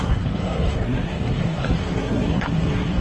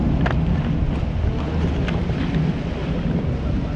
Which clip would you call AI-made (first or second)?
first